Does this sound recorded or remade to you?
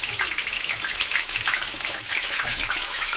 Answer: remade